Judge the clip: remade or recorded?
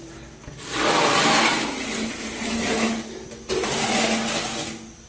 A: recorded